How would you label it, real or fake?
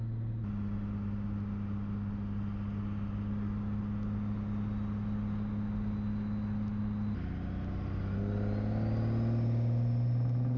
real